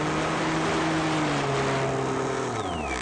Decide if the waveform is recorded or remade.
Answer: recorded